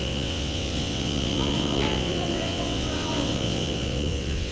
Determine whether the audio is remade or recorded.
remade